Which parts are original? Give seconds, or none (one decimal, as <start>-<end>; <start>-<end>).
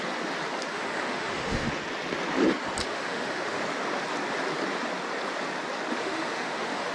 0.0-0.7; 1.7-2.9; 3.6-6.0